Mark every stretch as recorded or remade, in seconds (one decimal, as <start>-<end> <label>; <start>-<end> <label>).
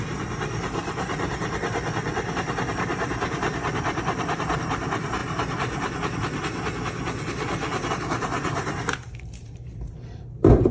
0.0-5.2 remade; 5.2-7.9 recorded; 7.9-10.7 remade